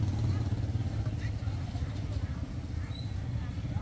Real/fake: real